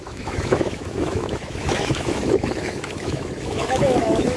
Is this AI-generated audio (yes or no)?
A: yes